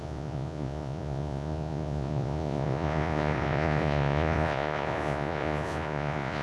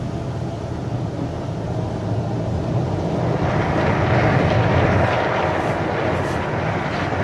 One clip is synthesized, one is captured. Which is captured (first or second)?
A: second